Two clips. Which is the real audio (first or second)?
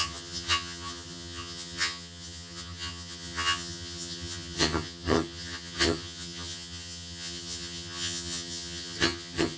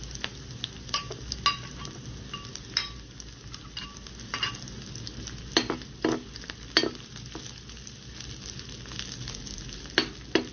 second